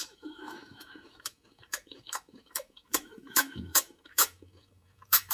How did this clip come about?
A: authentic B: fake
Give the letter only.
B